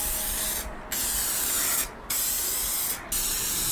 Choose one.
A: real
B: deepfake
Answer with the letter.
A